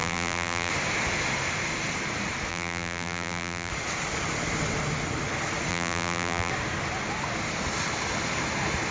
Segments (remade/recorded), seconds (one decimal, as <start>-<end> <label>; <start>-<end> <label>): 0.0-0.7 remade; 0.7-2.5 recorded; 2.5-3.7 remade; 3.7-5.7 recorded; 5.7-6.5 remade; 6.5-8.9 recorded